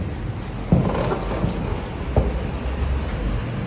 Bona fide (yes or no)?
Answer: yes